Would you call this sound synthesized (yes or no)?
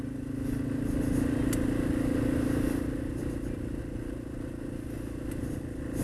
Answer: no